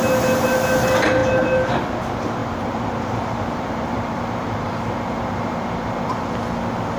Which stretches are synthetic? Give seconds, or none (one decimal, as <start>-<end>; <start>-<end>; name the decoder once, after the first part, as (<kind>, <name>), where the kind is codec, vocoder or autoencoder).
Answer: 2.4-6.1 (vocoder, BigVGAN v2)